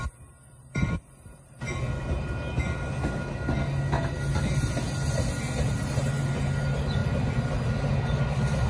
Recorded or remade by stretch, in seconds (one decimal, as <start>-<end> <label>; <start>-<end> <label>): 0.0-8.7 recorded